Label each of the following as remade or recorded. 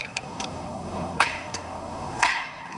remade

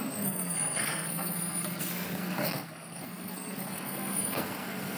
remade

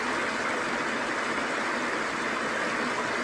recorded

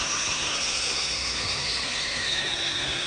remade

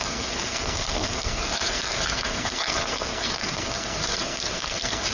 remade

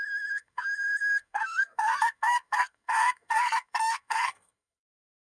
remade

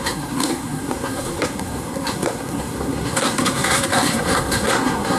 remade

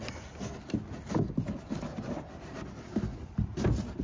recorded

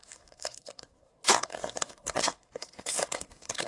remade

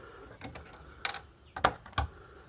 recorded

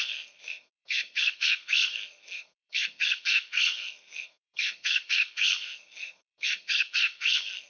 remade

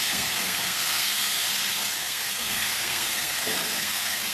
remade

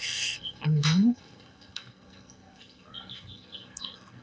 remade